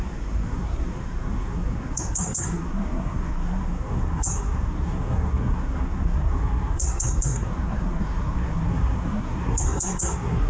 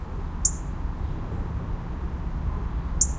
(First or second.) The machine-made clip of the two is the first